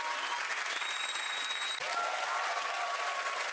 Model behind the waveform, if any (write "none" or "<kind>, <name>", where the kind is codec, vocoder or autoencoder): none